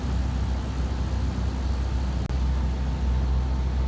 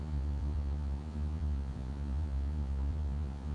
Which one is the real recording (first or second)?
first